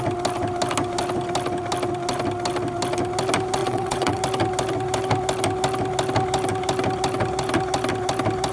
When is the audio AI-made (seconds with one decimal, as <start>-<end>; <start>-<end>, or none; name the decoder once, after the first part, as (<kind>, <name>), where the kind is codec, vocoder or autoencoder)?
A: 3.6-4.2 (vocoder, WaveNeXt)